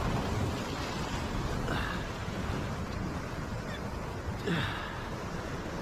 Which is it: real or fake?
real